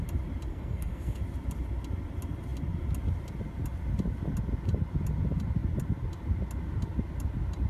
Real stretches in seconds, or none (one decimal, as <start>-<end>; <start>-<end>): 0.0-0.5; 1.2-7.7